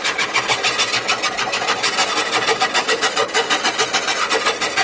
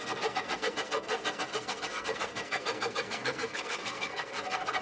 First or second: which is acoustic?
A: first